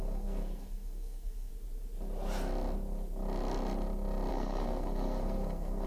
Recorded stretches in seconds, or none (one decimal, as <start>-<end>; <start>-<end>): 1.5-4.3